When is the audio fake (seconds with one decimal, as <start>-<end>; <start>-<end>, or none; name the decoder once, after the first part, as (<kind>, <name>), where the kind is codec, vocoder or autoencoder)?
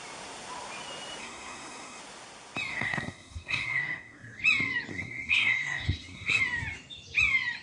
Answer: 1.2-2.0 (codec, SNAC); 2.7-4.4; 4.9-6.4